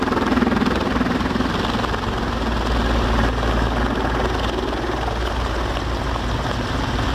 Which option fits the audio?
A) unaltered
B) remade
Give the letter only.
A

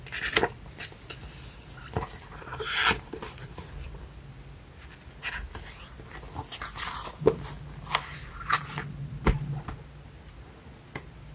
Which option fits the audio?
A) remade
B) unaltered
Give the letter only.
B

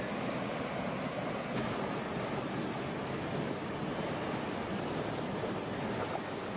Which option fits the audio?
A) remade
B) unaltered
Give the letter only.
B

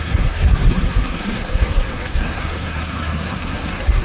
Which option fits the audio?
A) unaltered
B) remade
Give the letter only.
B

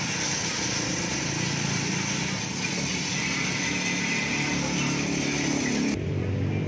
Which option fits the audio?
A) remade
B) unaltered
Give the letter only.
B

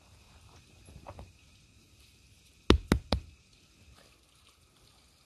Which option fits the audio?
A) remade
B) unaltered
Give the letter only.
B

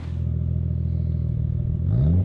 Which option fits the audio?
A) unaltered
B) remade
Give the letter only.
A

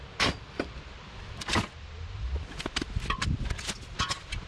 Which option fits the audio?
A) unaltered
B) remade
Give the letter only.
A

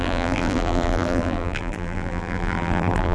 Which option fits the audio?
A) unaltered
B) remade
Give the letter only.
B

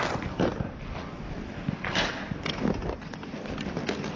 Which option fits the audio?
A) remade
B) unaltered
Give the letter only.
B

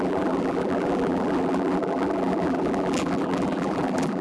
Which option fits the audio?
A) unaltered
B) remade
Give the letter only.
B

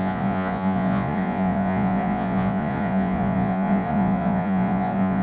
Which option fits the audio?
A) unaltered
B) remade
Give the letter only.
B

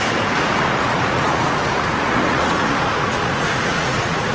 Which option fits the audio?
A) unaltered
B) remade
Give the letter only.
B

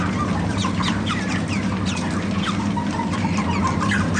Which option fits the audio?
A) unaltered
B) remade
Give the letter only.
A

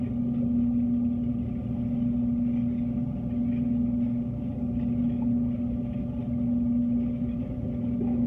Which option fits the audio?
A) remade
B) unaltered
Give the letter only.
B